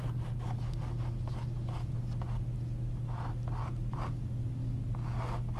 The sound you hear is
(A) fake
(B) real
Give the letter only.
B